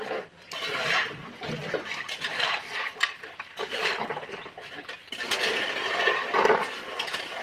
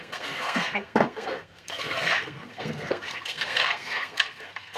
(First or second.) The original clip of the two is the first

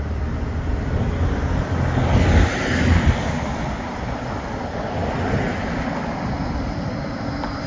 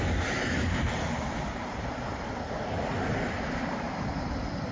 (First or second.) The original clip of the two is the first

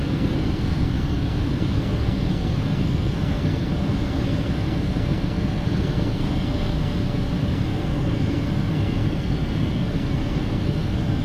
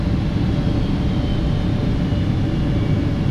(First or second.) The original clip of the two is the second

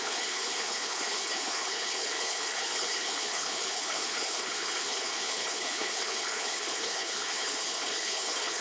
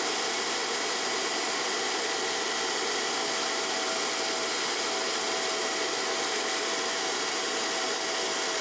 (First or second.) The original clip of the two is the second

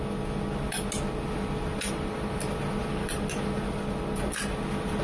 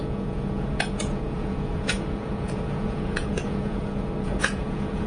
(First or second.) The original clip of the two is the first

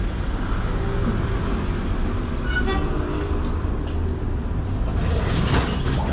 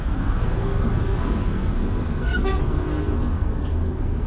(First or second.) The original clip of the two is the first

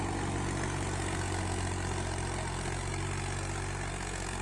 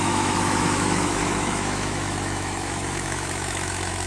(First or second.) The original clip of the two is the first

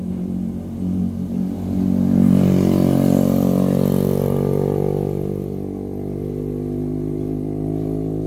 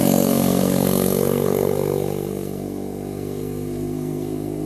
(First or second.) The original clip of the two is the first